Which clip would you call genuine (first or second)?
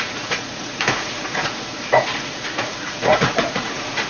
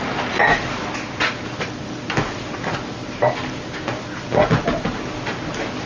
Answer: second